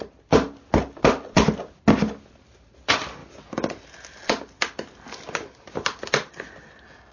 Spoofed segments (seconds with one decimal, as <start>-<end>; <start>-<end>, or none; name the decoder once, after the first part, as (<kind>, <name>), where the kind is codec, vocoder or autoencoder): none